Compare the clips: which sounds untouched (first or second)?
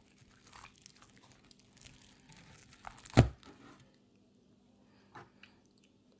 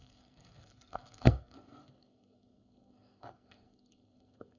first